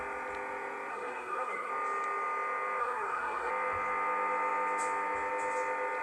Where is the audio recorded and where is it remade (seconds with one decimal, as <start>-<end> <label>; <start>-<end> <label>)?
0.0-0.9 recorded; 0.9-1.7 remade; 1.7-2.8 recorded; 2.8-3.5 remade; 3.5-6.0 recorded